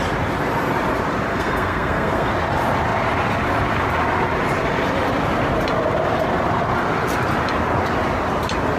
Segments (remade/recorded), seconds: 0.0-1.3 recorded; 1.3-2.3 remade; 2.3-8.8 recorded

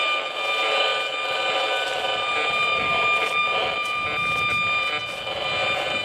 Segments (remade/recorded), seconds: 0.0-6.0 recorded

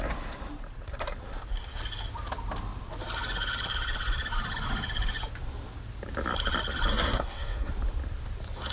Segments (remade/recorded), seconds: 0.0-6.9 recorded; 6.9-7.7 remade; 7.7-8.7 recorded

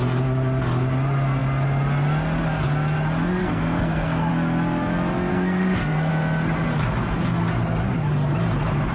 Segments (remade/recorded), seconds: 0.0-3.4 recorded; 3.4-4.3 remade; 4.3-5.3 recorded; 5.3-6.1 remade; 6.1-8.9 recorded

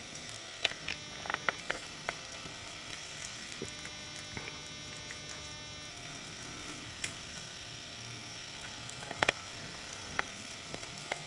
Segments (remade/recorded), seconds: 0.0-0.9 remade; 0.9-1.6 recorded; 1.6-3.6 remade; 3.6-5.9 recorded; 5.9-11.3 remade

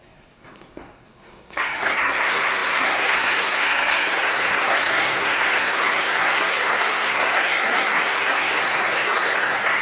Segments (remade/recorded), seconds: 0.0-9.8 remade

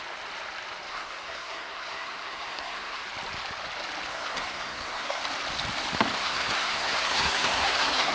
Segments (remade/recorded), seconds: 0.0-0.9 recorded; 0.9-3.0 remade; 3.0-4.1 recorded; 4.1-5.2 remade; 5.2-6.2 recorded; 6.2-8.1 remade

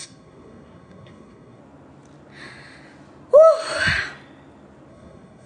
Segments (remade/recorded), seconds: 0.0-1.6 remade; 1.6-4.9 recorded; 4.9-5.5 remade